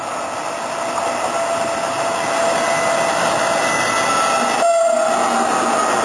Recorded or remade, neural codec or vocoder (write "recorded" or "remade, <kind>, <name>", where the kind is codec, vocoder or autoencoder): recorded